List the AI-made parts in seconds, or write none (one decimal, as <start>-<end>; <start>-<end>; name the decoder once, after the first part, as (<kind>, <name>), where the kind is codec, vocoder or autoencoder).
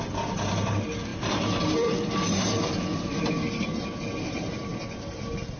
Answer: 1.1-3.3 (vocoder, BigVGAN v2)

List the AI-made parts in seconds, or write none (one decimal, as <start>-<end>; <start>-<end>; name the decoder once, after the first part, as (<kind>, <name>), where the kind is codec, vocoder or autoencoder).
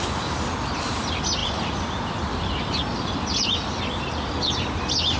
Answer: none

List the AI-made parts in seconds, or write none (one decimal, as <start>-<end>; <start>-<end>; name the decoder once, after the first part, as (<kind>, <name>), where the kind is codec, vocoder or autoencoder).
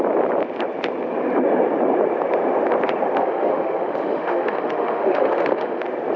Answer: 3.2-5.8 (autoencoder, DAC-VAE)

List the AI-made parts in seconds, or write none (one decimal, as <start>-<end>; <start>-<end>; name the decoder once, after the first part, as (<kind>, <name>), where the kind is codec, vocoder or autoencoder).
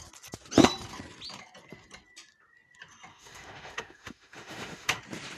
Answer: 3.1-5.0 (autoencoder, DAC-VAE)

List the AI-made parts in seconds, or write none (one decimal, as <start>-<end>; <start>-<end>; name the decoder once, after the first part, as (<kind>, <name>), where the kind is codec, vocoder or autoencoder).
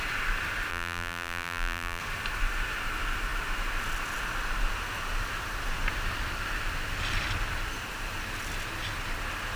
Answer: 0.7-2.0 (vocoder, BigVGAN v2)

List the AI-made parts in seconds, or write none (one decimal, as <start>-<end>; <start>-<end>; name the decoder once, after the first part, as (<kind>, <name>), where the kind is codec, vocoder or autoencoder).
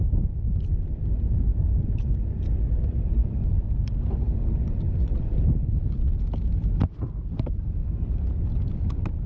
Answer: 0.0-1.5 (vocoder, BigVGAN v2); 2.7-9.3